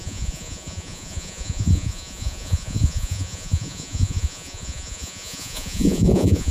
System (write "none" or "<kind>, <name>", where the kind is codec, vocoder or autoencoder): vocoder, Vocos